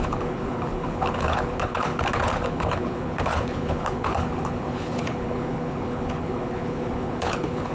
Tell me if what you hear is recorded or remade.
remade